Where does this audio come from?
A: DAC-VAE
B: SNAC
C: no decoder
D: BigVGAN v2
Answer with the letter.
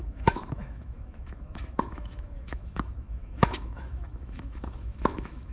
A